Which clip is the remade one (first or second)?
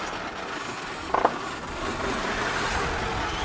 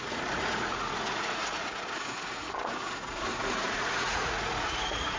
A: second